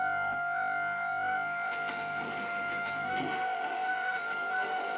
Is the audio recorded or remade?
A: remade